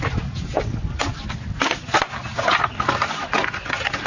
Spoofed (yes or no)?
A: no